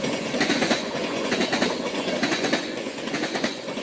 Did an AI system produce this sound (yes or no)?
yes